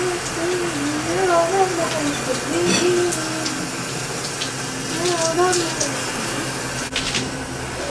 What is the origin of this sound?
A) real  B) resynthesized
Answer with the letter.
A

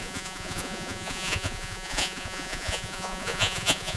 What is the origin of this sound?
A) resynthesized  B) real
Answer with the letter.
A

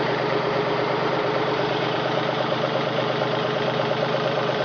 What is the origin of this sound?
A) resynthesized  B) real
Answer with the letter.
A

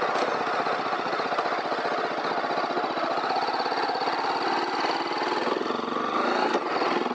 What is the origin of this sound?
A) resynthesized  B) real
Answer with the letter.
B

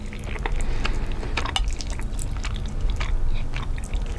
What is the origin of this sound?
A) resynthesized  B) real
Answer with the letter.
B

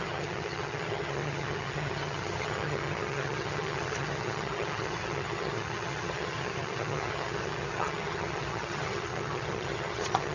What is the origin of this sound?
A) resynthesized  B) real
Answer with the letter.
A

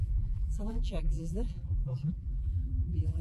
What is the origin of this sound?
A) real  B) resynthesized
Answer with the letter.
B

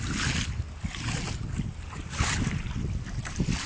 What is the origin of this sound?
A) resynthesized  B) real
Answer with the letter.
B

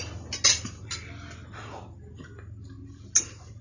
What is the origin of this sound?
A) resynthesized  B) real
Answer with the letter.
B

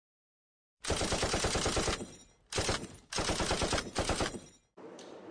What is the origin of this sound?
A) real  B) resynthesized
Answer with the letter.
B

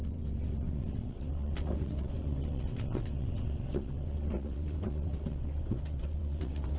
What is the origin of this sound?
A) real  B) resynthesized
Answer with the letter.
B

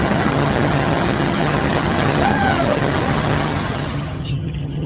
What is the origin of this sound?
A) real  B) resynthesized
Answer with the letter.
B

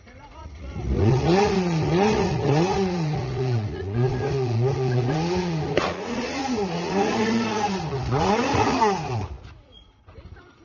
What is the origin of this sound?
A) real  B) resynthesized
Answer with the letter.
B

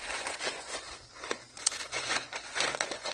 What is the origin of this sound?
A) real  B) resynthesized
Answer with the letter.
B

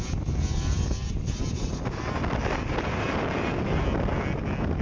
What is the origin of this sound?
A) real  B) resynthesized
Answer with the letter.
A